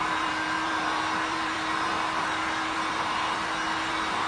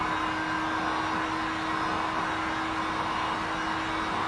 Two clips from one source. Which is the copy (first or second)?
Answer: first